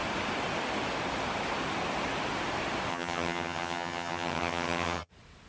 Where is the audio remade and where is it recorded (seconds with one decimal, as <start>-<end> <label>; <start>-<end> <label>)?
0.0-2.9 recorded; 2.9-5.1 remade; 5.1-5.5 recorded